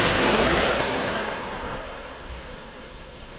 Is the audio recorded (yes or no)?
no